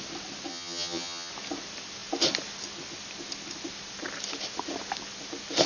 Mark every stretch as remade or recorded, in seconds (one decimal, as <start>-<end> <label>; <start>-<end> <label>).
0.0-0.5 recorded; 0.5-1.3 remade; 1.3-5.7 recorded